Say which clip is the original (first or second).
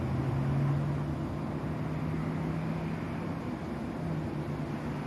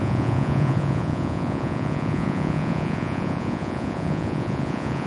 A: first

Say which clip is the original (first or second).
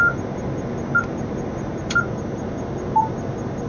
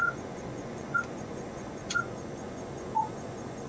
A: first